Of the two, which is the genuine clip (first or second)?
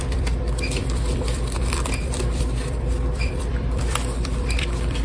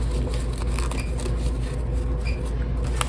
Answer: second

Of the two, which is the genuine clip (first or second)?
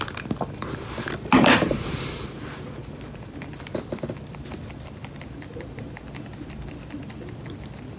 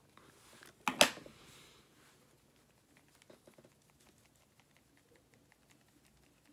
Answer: second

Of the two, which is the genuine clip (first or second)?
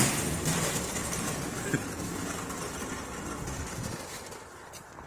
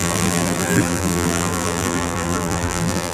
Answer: first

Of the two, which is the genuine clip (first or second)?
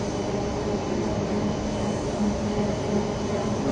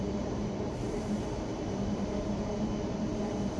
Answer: first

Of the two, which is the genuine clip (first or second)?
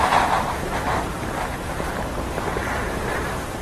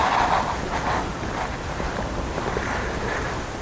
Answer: second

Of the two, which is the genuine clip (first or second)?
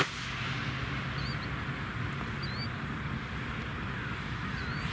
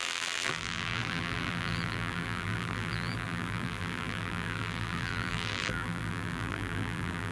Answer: first